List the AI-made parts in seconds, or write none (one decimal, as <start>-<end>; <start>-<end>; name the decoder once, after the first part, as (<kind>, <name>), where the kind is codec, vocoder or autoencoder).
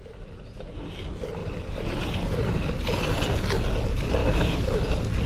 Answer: 4.2-4.8 (autoencoder, DAC-VAE)